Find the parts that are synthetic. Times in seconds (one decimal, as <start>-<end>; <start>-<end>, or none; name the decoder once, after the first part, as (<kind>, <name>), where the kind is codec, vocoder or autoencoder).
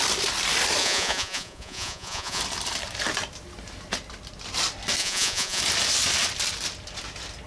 0.8-2.4 (vocoder, Vocos); 5.0-5.6